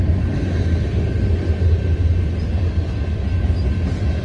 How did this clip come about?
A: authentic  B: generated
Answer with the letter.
A